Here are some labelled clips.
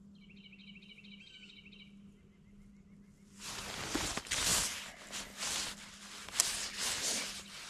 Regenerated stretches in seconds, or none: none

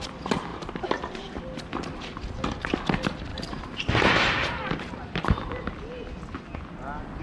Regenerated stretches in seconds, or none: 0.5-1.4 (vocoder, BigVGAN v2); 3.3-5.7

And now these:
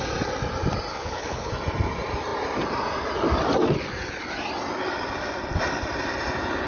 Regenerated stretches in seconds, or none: 0.9-1.5 (codec, HILCodec)

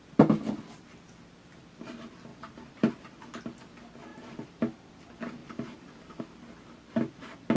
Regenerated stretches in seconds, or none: 2.3-2.9 (vocoder, BigVGAN v2); 4.1-5.0; 5.4-6.2